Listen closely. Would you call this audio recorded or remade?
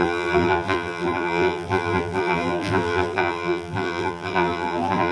remade